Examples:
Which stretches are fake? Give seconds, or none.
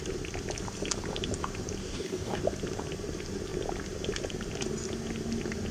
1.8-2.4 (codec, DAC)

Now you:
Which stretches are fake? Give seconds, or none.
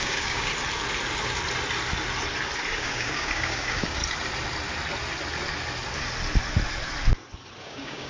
0.0-0.5 (codec, DAC); 2.8-4.0; 7.6-8.1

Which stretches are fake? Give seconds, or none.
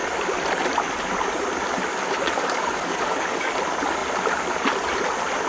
1.9-3.5 (codec, DAC)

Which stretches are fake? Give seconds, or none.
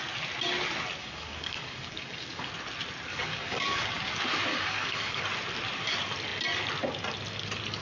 1.0-2.5 (codec, DAC); 3.1-3.8; 4.5-5.2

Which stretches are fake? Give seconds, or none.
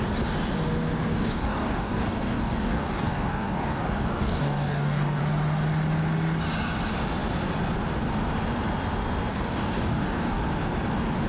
1.1-5.2 (codec, DAC); 9.3-10.4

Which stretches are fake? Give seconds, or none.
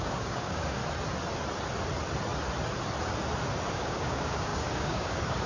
0.0-0.8 (codec, DAC); 3.7-5.5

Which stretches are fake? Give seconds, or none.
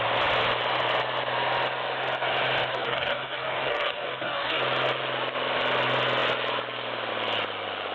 2.7-4.6 (codec, DAC)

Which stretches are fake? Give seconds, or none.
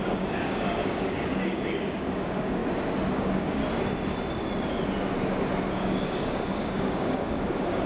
0.0-2.6 (codec, DAC); 3.1-3.6; 5.7-7.9